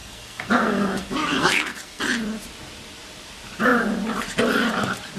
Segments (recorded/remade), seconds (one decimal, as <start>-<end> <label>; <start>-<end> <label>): 0.0-2.0 remade; 2.0-5.2 recorded